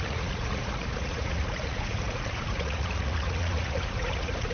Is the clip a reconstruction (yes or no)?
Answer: yes